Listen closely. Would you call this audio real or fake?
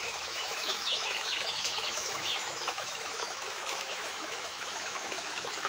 fake